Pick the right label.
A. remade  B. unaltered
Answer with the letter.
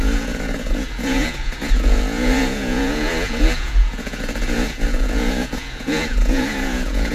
A